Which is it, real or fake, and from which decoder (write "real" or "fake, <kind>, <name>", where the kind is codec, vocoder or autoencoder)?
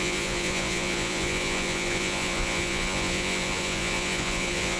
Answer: fake, vocoder, Vocos